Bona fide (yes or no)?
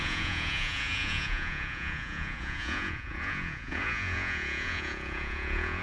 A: no